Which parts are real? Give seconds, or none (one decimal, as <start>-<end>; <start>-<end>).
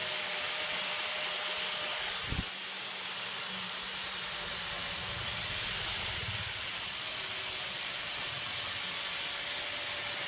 0.0-10.3